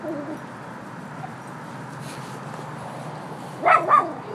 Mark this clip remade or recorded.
recorded